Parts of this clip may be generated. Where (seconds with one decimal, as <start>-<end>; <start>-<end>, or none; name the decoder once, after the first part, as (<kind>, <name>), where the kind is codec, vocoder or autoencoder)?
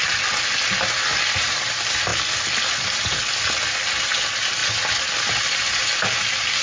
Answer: none